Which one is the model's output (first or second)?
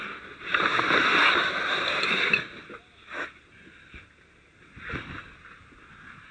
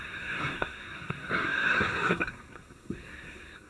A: second